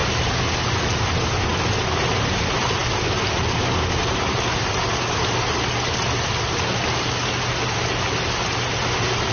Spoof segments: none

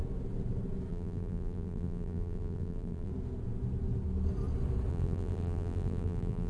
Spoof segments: 0.9-3.1 (vocoder, BigVGAN v2); 4.9-6.5

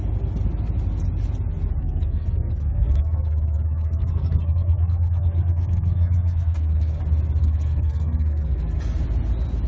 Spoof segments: 1.8-7.0 (codec, SNAC); 7.4-8.8

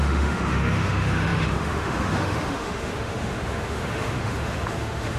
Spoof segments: 0.0-5.2 (autoencoder, DAC-VAE)

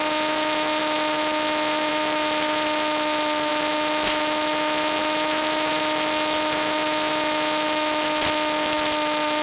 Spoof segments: none

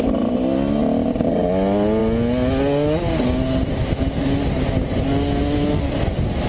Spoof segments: none

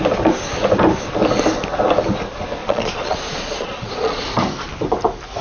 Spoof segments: 2.6-4.2 (vocoder, Vocos)

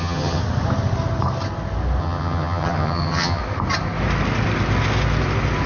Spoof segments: 0.0-0.4 (vocoder, HiFi-GAN); 2.0-3.4